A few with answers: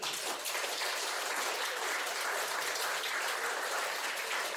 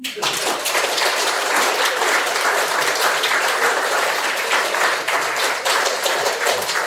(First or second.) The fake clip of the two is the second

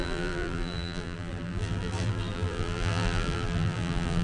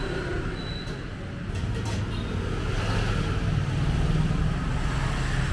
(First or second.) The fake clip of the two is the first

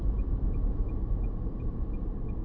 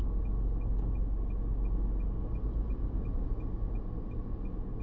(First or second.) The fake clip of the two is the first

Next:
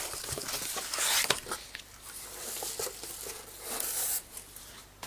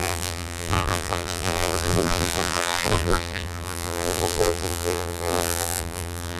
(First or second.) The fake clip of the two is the second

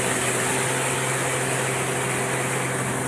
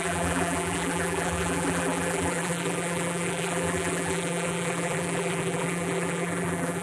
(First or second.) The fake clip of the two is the second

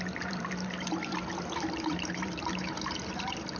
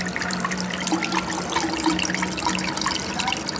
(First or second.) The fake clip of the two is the first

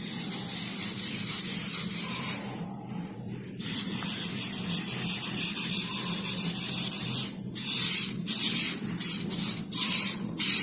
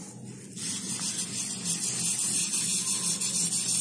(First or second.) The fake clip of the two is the first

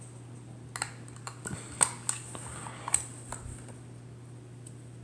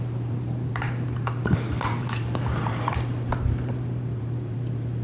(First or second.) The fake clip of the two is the second